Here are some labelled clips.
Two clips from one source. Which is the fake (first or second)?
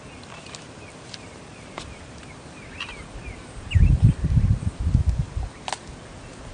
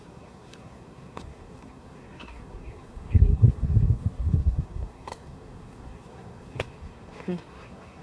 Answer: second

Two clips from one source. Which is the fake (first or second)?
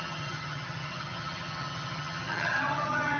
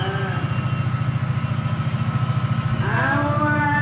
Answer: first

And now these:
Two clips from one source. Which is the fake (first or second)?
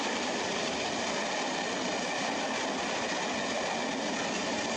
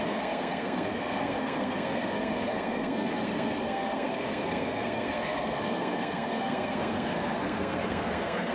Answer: second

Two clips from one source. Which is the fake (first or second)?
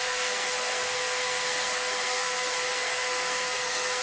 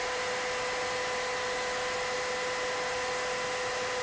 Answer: first